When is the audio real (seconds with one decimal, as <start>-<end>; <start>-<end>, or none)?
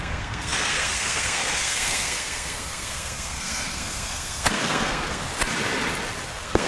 5.3-6.3